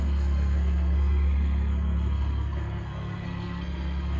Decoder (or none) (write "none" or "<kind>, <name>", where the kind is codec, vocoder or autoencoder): codec, SNAC